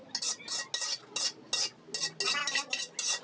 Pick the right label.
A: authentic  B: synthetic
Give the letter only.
A